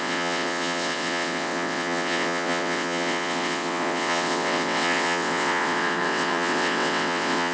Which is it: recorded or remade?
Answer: remade